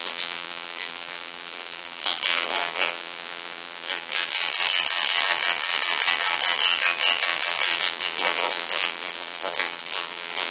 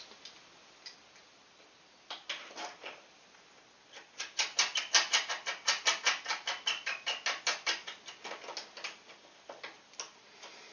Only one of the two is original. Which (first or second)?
second